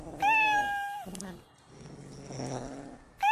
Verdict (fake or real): real